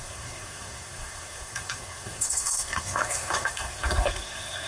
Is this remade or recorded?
remade